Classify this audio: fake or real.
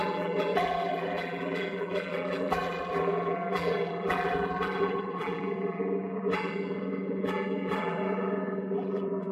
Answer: fake